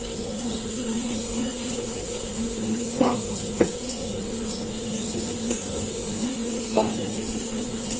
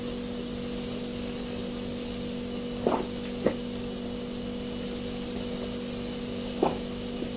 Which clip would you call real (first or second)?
second